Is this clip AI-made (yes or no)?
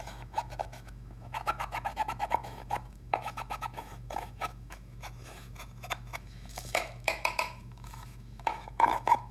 yes